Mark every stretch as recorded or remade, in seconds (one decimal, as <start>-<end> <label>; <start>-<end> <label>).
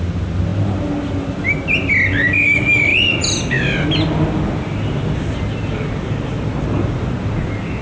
0.0-7.8 recorded